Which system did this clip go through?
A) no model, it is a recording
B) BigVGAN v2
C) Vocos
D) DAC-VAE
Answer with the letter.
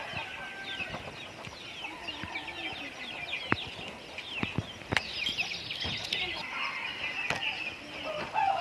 A